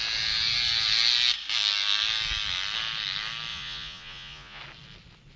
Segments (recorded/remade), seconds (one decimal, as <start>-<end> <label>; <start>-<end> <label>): 0.0-3.5 recorded; 3.5-4.6 remade; 4.6-5.4 recorded